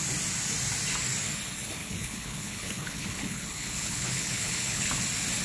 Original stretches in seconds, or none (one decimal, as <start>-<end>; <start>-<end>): 0.0-1.8; 5.0-5.4